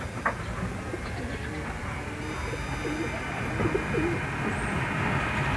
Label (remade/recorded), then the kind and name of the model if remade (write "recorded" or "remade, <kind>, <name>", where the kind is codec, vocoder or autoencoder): recorded